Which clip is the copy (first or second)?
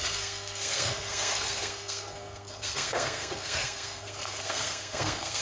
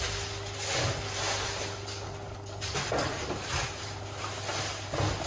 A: first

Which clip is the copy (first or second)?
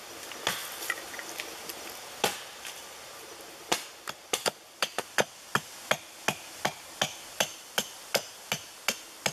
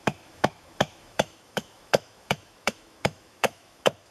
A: second